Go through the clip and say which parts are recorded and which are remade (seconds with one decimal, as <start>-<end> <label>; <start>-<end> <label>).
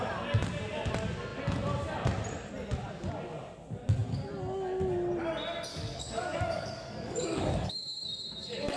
0.0-5.7 recorded; 5.7-8.8 remade